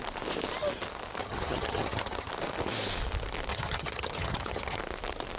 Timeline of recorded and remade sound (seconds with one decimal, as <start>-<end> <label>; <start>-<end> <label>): 0.0-1.2 recorded; 1.2-2.3 remade; 2.3-3.5 recorded; 3.5-4.8 remade; 4.8-5.4 recorded